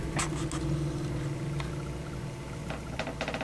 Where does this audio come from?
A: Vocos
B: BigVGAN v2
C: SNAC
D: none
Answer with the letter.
D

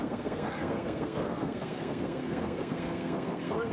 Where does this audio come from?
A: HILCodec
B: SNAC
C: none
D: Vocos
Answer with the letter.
B